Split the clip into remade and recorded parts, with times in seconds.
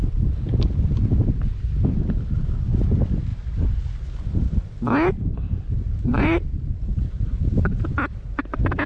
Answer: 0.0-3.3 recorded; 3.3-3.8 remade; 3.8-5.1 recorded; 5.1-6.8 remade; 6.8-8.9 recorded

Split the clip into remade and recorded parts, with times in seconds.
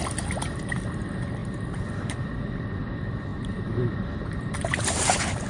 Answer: 0.0-1.4 recorded; 1.4-2.8 remade; 2.8-3.3 recorded; 3.3-5.1 remade; 5.1-5.5 recorded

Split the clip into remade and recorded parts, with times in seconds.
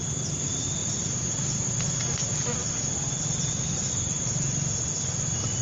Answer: 0.0-5.6 recorded